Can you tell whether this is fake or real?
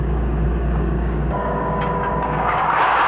fake